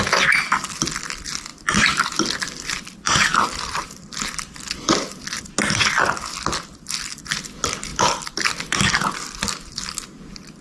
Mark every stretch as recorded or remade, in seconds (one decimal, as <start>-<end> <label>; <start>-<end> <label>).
0.0-1.5 recorded; 1.5-5.4 remade; 5.4-7.9 recorded; 7.9-9.1 remade; 9.1-10.6 recorded